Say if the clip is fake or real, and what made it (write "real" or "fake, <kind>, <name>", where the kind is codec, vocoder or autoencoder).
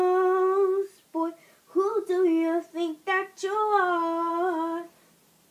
real